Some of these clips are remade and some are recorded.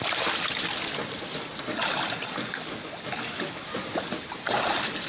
remade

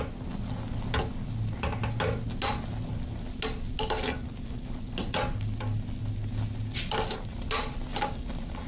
recorded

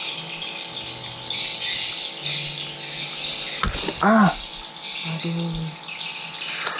recorded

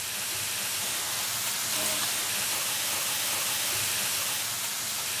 recorded